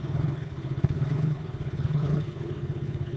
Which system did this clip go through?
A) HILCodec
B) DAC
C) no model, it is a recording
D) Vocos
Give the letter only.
A